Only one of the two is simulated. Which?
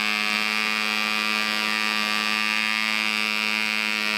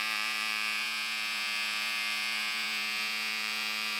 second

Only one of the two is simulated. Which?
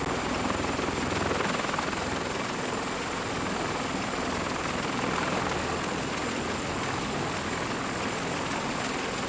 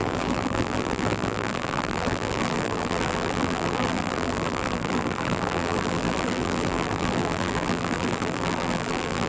second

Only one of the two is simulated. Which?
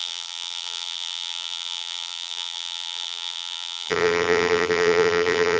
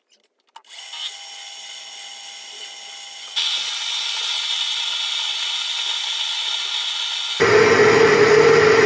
first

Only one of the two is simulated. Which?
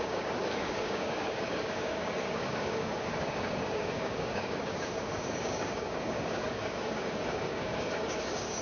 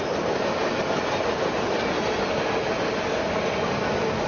first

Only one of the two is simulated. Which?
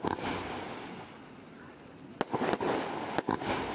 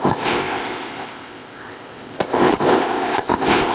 second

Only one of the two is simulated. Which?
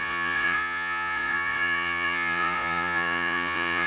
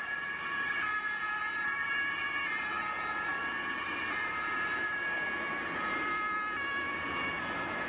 first